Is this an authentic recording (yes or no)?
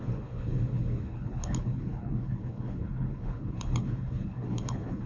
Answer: no